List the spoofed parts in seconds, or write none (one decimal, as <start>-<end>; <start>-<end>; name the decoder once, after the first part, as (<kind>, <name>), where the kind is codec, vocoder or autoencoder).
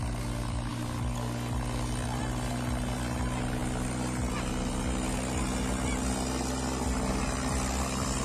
none